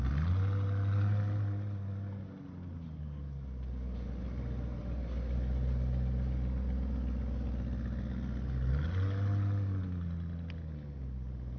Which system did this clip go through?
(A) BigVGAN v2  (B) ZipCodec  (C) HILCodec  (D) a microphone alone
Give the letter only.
D